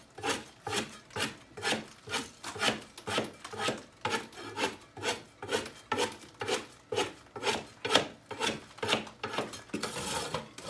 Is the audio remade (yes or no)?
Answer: no